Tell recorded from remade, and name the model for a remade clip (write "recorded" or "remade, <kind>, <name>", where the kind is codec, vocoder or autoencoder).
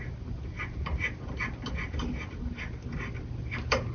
recorded